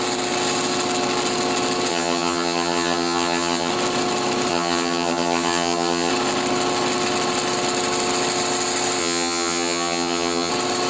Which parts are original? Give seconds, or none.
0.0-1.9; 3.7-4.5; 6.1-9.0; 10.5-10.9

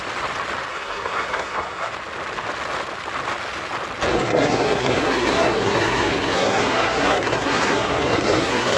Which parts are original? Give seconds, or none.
0.0-0.7; 1.9-4.1